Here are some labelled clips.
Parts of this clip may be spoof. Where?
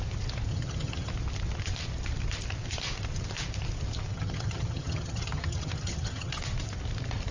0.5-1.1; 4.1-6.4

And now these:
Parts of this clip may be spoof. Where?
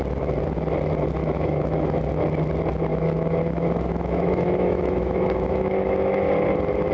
1.2-2.0; 2.9-6.3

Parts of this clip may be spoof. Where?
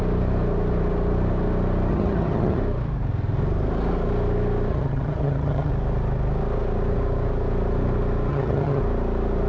1.9-2.6; 4.7-5.7; 8.3-8.8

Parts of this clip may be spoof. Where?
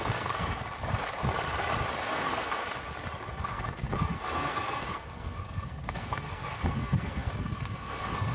0.0-0.6; 2.1-2.6; 3.3-8.3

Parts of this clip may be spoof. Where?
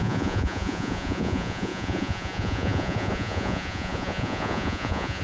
0.0-5.2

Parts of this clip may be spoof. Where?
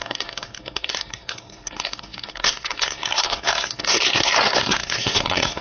0.0-5.6